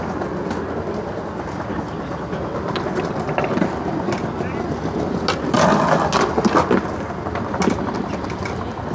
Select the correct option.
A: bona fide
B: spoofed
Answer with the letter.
A